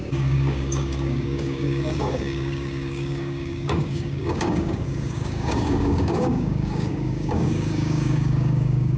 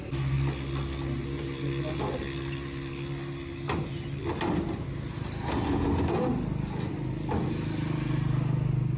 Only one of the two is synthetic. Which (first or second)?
first